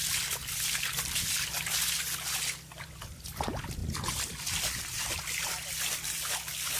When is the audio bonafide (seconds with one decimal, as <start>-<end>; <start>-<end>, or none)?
0.0-6.8